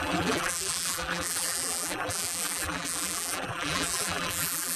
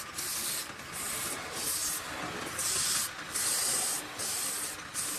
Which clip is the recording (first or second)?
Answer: second